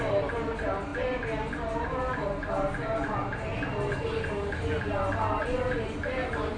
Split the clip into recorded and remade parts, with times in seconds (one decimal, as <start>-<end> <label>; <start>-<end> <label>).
0.0-6.6 recorded